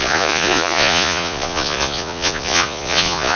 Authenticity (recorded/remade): remade